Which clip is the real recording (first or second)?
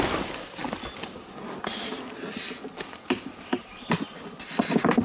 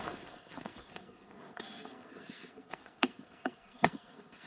first